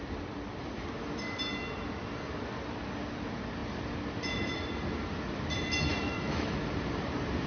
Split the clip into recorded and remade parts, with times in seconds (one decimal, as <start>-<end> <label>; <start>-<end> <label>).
0.0-5.9 recorded; 5.9-6.6 remade; 6.6-7.5 recorded

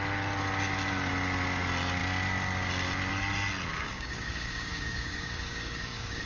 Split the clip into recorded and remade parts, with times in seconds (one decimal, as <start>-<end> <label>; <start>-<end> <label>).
0.0-3.7 recorded; 3.7-6.2 remade

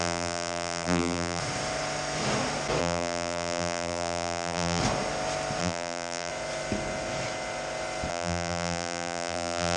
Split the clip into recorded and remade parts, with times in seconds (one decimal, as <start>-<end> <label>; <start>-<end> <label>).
0.0-1.4 remade; 1.4-2.8 recorded; 2.8-4.8 remade; 4.8-5.6 recorded; 5.6-6.3 remade; 6.3-8.1 recorded; 8.1-9.8 remade

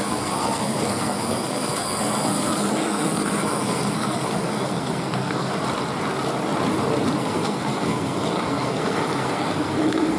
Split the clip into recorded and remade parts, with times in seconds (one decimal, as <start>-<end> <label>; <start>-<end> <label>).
0.0-5.5 remade; 5.5-7.2 recorded; 7.2-10.2 remade

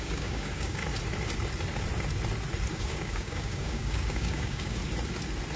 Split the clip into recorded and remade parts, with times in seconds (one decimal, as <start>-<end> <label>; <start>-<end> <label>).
0.0-0.8 remade; 0.8-2.7 recorded; 2.7-4.8 remade; 4.8-5.6 recorded